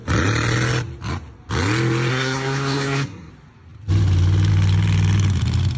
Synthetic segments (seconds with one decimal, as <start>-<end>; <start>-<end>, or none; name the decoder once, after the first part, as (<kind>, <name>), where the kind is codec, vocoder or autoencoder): 2.1-3.3 (codec, SNAC)